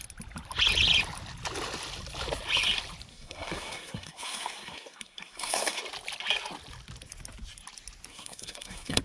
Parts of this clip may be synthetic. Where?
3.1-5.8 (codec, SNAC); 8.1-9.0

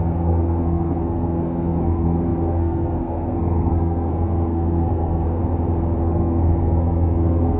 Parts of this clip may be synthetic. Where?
0.0-5.4 (codec, SNAC); 6.0-7.6

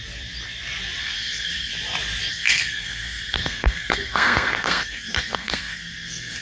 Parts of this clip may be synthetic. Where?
1.0-1.7 (codec, SNAC); 2.3-6.4